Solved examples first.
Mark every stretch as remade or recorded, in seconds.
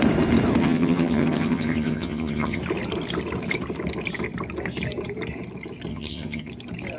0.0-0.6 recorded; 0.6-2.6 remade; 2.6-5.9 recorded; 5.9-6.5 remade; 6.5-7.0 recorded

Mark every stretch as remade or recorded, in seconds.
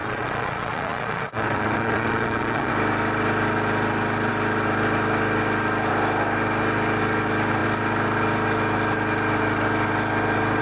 0.0-2.7 remade; 2.7-10.6 recorded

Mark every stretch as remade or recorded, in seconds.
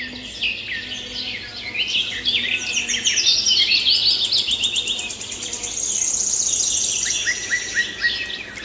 0.0-8.6 recorded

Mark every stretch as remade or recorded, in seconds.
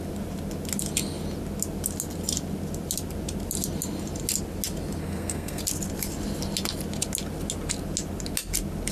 0.0-5.0 recorded; 5.0-5.6 remade; 5.6-8.9 recorded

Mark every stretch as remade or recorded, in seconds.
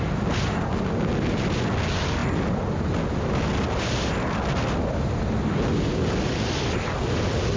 0.0-7.6 recorded